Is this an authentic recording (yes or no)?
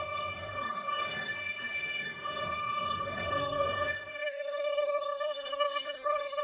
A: no